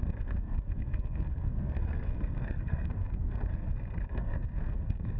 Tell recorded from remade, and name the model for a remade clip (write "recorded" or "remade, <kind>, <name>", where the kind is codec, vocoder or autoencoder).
remade, codec, SNAC